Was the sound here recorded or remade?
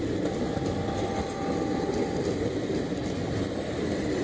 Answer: recorded